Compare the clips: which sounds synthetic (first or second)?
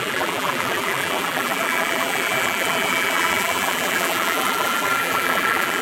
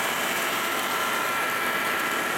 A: first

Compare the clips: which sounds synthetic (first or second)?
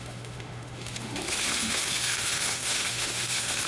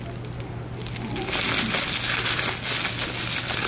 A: first